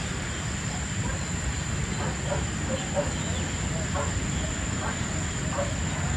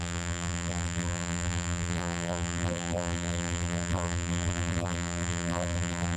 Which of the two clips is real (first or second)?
first